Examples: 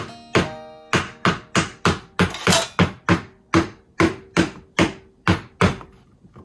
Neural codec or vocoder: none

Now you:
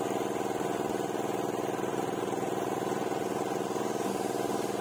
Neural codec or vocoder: none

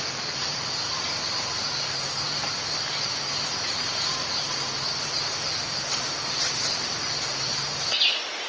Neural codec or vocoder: none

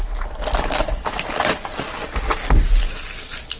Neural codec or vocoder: none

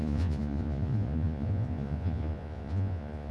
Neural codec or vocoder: vocoder, Vocos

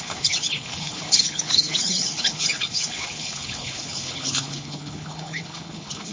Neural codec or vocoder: codec, HILCodec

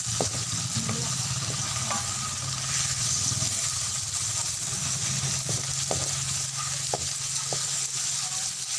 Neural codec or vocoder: none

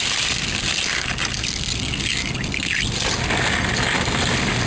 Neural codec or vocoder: none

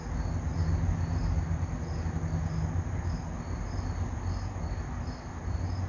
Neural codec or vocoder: none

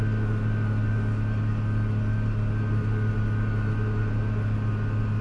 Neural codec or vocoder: none